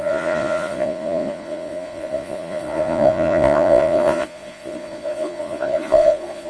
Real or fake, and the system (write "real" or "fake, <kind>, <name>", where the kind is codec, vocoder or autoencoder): fake, vocoder, Vocos